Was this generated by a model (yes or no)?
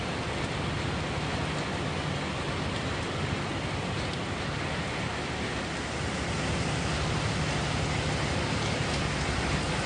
no